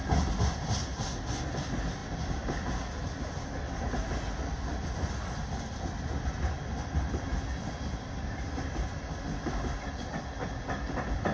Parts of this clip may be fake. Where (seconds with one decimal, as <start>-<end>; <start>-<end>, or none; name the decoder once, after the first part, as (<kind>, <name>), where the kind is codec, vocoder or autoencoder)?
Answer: none